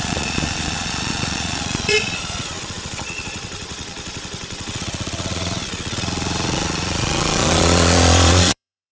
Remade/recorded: remade